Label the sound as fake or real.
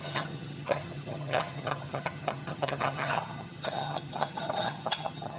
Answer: fake